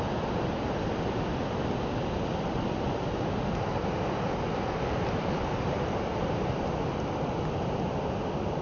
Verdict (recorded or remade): recorded